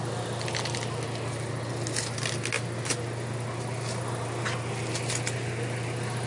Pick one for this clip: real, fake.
real